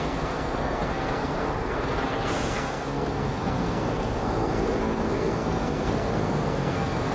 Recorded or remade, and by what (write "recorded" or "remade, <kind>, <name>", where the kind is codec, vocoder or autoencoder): remade, codec, SNAC